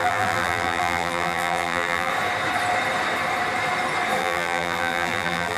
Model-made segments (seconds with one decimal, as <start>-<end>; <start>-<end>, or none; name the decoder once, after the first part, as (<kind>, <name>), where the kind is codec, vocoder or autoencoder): 0.0-2.1 (vocoder, BigVGAN v2); 4.2-5.6